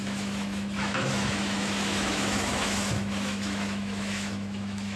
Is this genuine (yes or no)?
no